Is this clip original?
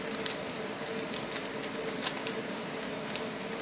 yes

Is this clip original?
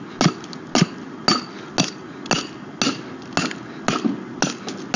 yes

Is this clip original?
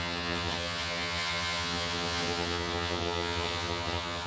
no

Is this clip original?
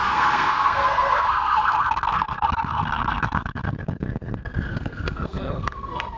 no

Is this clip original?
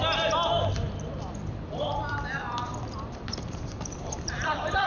no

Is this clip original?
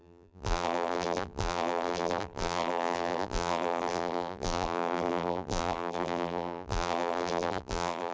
no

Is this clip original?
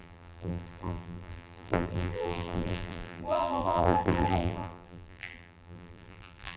no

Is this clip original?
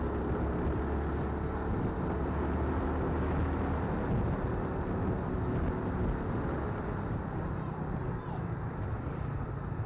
yes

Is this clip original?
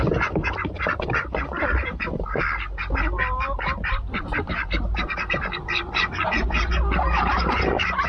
no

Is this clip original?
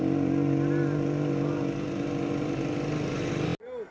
yes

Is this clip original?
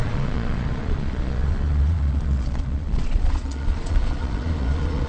no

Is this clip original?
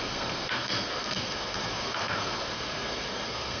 no